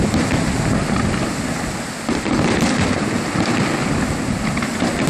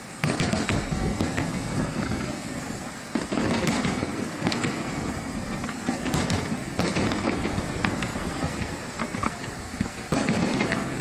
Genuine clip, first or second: first